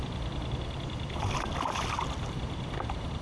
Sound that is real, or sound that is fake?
real